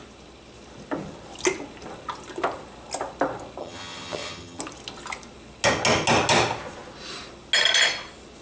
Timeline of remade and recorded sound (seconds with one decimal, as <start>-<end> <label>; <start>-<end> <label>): 0.0-3.6 recorded; 3.6-4.6 remade; 4.6-8.4 recorded